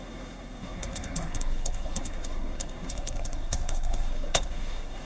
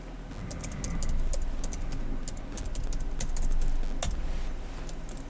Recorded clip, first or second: second